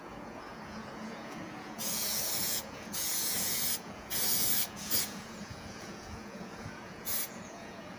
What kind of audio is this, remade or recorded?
remade